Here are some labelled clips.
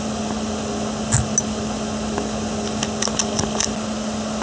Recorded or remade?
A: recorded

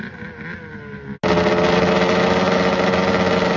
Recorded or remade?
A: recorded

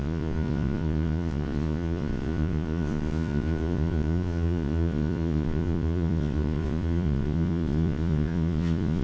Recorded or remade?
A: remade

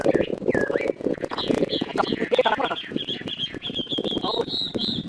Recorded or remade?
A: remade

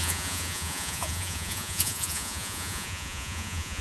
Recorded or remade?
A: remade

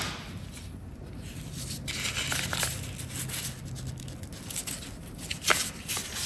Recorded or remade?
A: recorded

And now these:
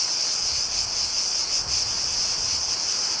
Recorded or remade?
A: recorded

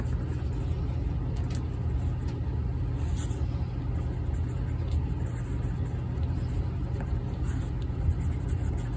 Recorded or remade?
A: recorded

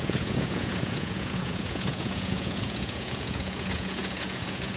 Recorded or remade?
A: remade